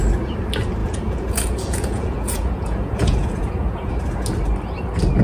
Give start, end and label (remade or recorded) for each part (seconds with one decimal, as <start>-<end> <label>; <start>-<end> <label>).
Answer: 0.0-0.8 recorded; 0.8-3.9 remade; 3.9-5.2 recorded